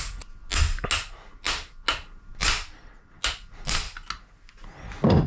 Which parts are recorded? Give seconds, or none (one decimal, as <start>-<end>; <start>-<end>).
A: 0.0-5.3